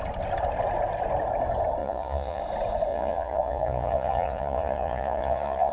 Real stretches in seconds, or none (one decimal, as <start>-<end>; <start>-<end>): 0.0-1.8; 2.4-2.9